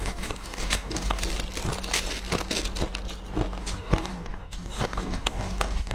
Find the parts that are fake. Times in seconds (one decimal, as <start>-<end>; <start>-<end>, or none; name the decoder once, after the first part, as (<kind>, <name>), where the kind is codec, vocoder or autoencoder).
0.0-1.2 (codec, DAC); 3.6-5.9